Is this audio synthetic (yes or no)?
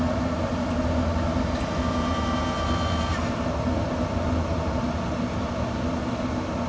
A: no